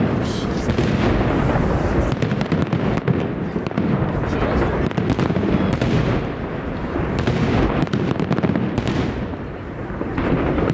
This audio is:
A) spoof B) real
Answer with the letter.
B